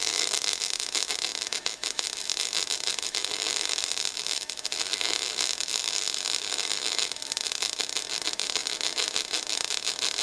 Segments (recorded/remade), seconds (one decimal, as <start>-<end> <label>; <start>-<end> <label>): 0.0-10.2 remade

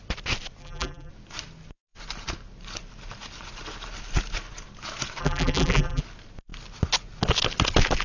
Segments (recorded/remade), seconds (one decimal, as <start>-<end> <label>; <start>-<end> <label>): 0.0-0.6 recorded; 0.6-1.1 remade; 1.1-5.2 recorded; 5.2-6.0 remade; 6.0-8.0 recorded

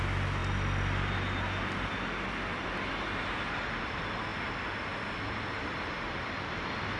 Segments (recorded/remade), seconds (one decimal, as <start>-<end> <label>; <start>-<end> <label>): 0.0-7.0 recorded

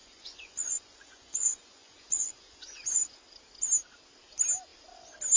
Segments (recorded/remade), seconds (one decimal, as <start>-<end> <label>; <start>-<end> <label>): 0.0-3.2 remade; 3.2-5.4 recorded

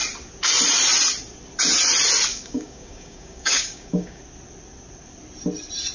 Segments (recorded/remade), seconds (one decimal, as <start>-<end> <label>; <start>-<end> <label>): 0.0-2.3 recorded; 2.3-4.2 remade; 4.2-5.9 recorded

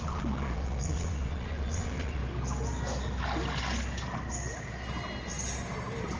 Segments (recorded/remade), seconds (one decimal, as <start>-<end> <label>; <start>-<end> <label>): 0.0-2.2 remade; 2.2-6.2 recorded

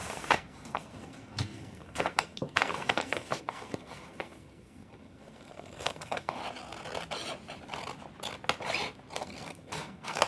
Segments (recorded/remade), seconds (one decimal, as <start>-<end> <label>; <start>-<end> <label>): 0.0-6.4 remade; 6.4-9.2 recorded; 9.2-10.3 remade